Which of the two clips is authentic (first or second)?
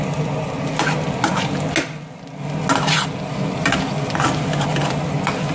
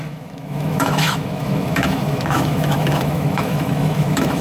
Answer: first